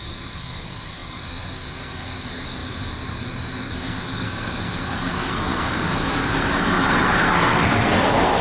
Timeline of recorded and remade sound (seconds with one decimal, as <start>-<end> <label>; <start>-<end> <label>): 0.0-8.4 remade